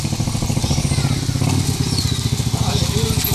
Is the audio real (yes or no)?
yes